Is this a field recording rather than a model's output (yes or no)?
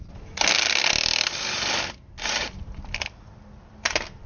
yes